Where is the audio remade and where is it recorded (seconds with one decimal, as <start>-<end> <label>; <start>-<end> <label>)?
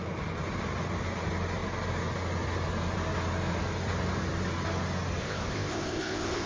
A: 0.0-5.2 recorded; 5.2-6.5 remade